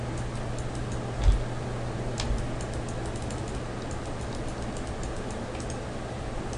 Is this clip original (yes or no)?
yes